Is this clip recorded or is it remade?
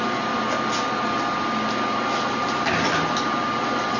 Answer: recorded